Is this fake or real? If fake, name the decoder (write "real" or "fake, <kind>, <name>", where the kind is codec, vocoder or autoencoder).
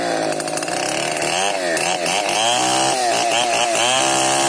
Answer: real